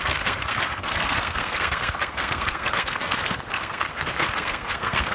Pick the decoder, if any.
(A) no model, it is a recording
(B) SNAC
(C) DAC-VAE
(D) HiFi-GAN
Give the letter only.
B